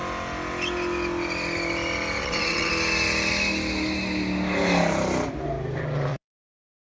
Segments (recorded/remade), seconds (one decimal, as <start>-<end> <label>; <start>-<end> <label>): 0.0-2.2 recorded; 2.2-2.7 remade; 2.7-6.1 recorded; 6.1-6.9 remade

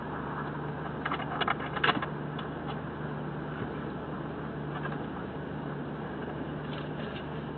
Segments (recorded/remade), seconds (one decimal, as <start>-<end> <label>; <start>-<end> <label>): 0.0-7.6 recorded

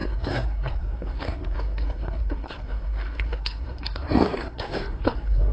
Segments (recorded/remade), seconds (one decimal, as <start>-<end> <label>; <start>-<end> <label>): 0.0-5.5 remade

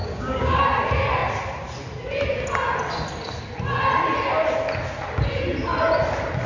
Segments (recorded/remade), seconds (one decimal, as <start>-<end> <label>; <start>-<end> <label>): 0.0-0.6 remade; 0.6-6.5 recorded

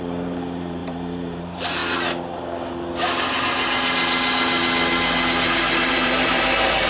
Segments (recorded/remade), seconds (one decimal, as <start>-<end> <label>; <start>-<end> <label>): 0.0-1.8 remade; 1.8-5.9 recorded; 5.9-6.9 remade

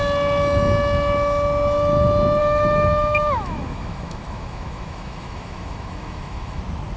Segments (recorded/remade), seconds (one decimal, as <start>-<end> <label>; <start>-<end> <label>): 0.0-2.4 recorded; 2.4-6.6 remade; 6.6-7.0 recorded